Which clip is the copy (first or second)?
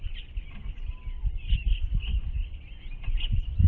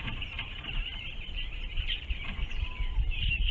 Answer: second